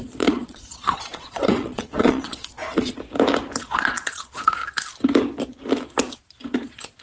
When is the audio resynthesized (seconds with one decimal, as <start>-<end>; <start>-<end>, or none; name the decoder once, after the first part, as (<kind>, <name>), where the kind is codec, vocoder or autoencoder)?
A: 0.0-2.6 (vocoder, Vocos); 3.6-4.6; 6.2-7.0

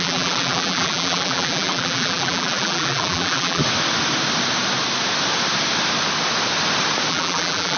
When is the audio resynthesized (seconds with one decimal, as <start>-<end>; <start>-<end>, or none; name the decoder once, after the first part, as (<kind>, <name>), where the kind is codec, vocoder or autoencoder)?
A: 0.0-3.6 (vocoder, BigVGAN v2); 7.1-7.8

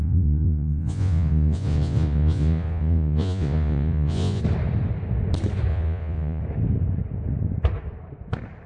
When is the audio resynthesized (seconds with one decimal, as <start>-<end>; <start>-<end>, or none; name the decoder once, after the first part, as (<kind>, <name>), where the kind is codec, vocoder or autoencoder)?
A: 0.0-4.4 (vocoder, Vocos); 5.7-6.4